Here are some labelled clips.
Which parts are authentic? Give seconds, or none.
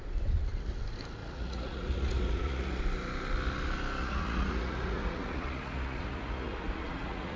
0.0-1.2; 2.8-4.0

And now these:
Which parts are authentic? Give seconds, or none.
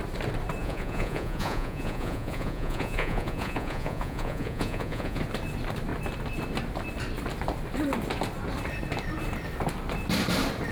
0.0-0.6; 5.2-10.7